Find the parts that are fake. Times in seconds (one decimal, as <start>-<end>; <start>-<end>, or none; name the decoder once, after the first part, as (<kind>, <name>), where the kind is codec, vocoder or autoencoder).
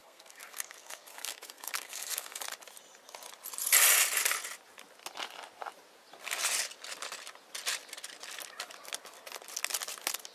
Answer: 0.0-2.4 (codec, SNAC)